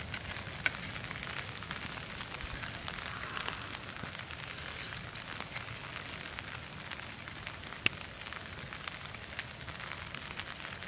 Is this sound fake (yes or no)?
no